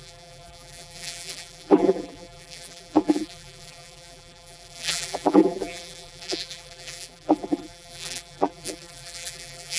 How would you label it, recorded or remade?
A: remade